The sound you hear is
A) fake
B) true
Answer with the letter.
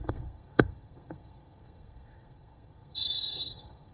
A